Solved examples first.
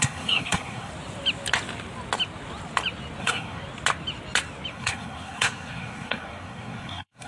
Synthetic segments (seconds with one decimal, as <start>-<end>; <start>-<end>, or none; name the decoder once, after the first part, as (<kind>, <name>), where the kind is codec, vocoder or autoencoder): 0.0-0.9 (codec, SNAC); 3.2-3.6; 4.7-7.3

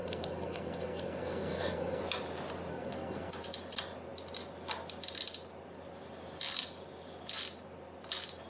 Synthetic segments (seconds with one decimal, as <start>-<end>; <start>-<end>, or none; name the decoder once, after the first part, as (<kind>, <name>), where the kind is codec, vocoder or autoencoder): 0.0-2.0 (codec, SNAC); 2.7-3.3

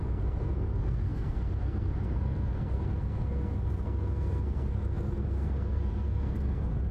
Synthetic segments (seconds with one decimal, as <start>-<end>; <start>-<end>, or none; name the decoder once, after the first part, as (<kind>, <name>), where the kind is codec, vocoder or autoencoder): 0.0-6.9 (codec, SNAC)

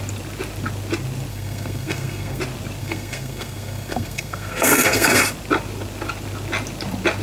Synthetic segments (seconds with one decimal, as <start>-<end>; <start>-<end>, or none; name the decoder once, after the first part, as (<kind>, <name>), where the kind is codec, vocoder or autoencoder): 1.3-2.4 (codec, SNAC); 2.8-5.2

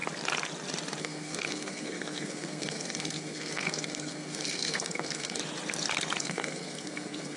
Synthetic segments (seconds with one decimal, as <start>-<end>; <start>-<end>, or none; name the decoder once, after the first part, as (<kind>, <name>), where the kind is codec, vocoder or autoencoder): 1.0-5.4 (codec, SNAC); 6.2-7.4

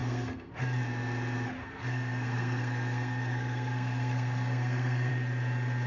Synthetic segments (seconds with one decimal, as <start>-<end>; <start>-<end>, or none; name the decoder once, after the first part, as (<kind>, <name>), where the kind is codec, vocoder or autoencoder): 0.0-0.5 (codec, SNAC); 1.6-5.1

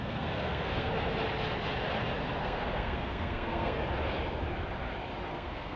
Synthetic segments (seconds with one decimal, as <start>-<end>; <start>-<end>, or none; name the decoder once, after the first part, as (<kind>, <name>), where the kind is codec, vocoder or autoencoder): 0.0-0.9 (codec, SNAC); 2.4-3.8; 5.3-5.8

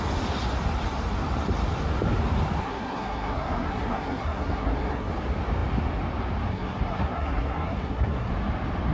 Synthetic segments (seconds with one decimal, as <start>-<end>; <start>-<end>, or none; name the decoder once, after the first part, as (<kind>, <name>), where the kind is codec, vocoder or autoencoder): 2.6-5.1 (codec, SNAC); 6.5-8.3